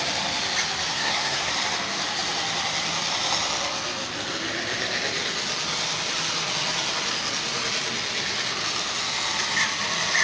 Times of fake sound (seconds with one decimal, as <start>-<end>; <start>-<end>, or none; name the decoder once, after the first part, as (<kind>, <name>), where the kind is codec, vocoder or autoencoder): 0.9-1.5 (codec, SNAC)